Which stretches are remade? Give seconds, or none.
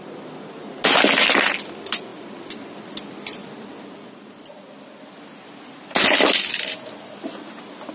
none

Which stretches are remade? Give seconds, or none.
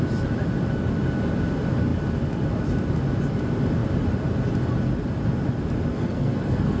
5.9-6.8 (codec, SNAC)